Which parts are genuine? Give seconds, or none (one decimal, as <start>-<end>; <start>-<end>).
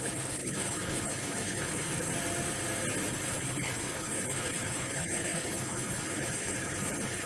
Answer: 2.1-3.1